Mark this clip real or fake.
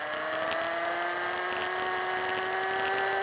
real